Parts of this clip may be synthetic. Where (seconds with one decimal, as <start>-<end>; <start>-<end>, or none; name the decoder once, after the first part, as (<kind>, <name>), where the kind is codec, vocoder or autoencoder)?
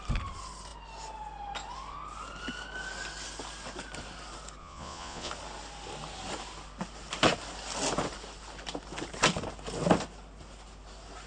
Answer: 4.6-5.3 (vocoder, Vocos)